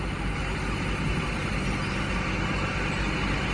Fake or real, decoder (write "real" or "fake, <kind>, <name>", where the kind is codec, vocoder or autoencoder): real